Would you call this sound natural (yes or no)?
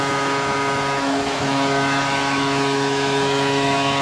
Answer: no